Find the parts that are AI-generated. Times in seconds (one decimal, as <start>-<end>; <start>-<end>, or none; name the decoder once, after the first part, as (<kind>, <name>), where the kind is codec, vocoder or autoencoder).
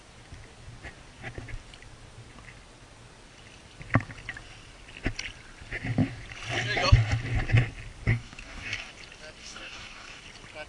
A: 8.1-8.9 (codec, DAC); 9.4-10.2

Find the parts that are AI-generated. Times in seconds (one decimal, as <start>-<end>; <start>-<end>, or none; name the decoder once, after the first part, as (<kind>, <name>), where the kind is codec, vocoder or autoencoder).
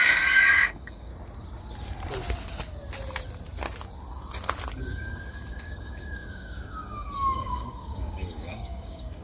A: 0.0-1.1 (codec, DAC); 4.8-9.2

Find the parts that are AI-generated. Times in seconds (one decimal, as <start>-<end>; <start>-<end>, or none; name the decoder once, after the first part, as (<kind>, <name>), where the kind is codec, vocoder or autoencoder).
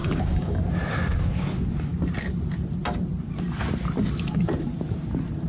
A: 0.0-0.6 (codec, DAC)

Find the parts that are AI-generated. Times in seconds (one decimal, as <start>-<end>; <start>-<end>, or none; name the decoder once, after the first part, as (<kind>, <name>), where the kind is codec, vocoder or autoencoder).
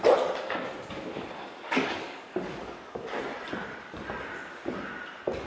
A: 0.4-3.2 (codec, DAC)